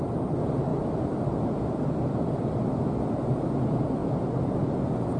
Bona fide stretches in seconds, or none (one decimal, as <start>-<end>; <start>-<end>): 0.0-0.7; 2.9-4.0; 4.6-5.2